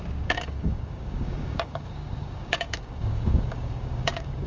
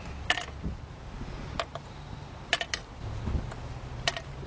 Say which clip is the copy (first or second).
first